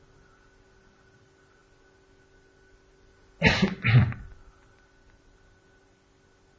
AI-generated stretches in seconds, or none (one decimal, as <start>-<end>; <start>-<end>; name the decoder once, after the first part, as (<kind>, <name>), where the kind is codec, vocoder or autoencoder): none